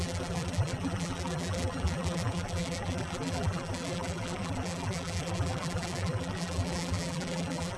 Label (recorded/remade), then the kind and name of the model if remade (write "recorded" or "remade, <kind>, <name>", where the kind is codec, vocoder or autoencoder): remade, vocoder, BigVGAN v2